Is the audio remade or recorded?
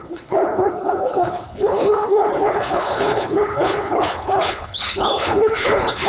remade